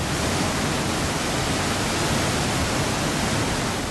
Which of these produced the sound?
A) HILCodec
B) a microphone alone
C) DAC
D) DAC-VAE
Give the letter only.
B